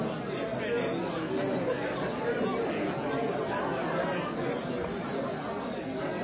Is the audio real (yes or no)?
yes